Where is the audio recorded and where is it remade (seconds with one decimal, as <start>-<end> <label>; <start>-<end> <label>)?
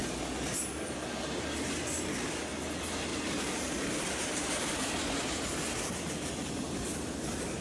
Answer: 0.0-3.1 recorded; 3.1-7.6 remade